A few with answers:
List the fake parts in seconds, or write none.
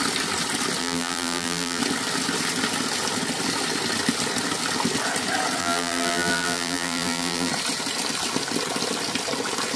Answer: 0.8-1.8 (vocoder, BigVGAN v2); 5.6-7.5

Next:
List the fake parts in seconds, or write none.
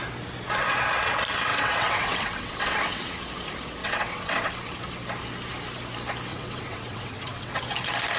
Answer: 1.5-3.1 (vocoder, WaveNeXt); 3.8-4.5; 6.3-7.6